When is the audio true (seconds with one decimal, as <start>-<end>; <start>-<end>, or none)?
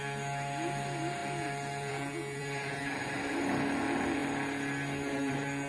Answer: 0.0-5.7